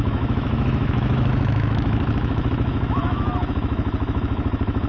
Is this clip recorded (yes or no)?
no